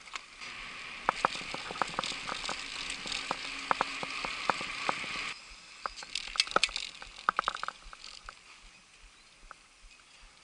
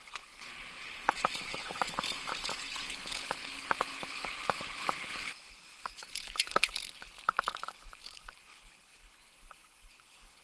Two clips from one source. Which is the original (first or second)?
first